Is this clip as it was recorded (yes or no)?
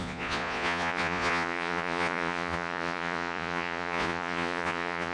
no